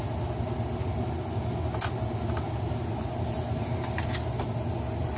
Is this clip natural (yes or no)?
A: yes